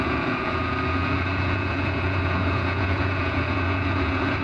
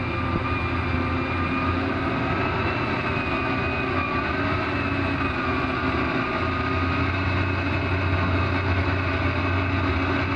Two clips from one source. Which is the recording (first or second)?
second